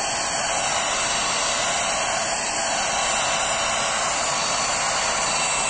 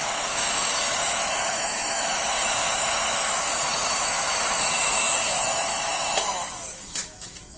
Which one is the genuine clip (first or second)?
first